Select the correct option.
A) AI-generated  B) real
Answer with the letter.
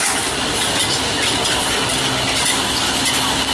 B